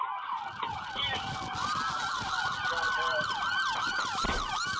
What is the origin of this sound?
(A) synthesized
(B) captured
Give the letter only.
B